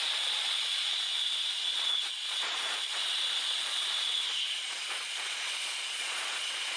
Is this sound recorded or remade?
remade